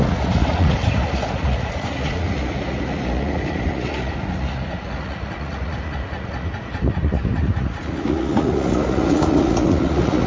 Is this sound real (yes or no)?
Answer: no